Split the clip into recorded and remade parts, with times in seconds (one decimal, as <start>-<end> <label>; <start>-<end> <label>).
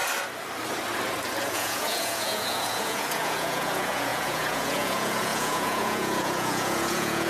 0.0-1.4 recorded; 1.4-7.3 remade